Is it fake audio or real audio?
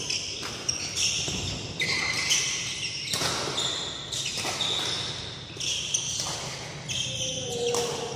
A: real